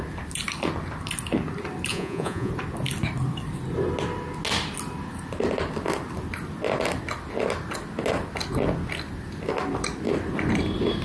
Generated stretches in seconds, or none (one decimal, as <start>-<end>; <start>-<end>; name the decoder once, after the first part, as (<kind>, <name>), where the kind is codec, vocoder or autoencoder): 1.9-2.5 (vocoder, Vocos)